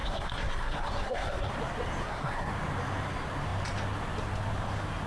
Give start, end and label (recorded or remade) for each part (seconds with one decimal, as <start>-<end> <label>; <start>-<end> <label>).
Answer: 0.0-1.5 remade; 1.5-2.0 recorded; 2.0-2.5 remade; 2.5-5.1 recorded